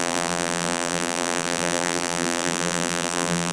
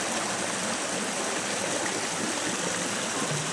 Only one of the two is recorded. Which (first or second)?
second